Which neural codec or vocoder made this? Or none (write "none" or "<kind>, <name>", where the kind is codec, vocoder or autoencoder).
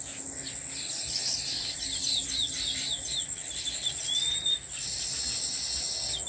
none